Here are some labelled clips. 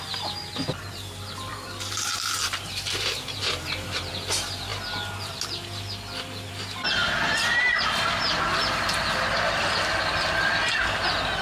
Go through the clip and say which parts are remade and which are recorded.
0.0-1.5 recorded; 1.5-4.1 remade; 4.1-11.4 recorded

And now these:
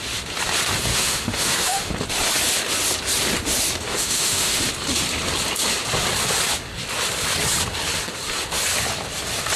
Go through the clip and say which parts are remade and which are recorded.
0.0-0.9 recorded; 0.9-1.9 remade; 1.9-3.9 recorded; 3.9-4.7 remade; 4.7-9.6 recorded